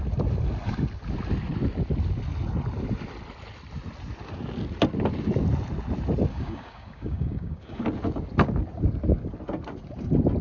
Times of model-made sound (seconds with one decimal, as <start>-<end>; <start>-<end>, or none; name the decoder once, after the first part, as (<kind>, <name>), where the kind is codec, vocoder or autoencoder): 6.3-7.8 (codec, DAC)